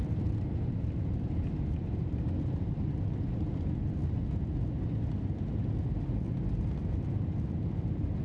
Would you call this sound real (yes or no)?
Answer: yes